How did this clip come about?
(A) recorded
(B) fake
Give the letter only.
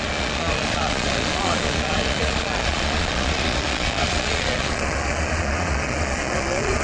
B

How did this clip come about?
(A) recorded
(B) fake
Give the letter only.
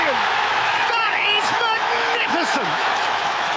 B